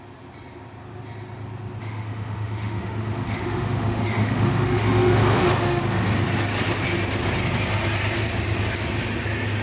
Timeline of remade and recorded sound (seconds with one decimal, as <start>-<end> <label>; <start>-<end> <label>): 0.0-1.8 recorded; 1.8-5.8 remade; 5.8-9.6 recorded